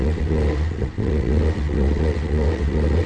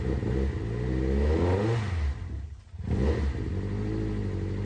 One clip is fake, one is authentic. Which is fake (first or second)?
first